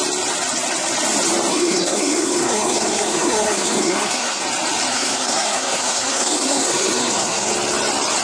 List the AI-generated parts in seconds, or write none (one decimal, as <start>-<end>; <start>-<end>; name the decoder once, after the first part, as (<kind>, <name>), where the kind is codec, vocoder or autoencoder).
1.5-4.4 (codec, SNAC); 4.9-7.5